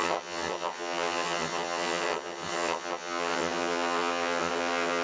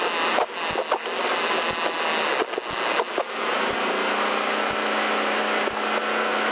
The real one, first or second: second